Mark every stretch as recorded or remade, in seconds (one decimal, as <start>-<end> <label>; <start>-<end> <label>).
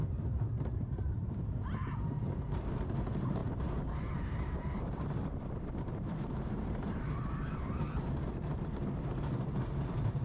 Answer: 0.0-0.8 recorded; 0.8-10.2 remade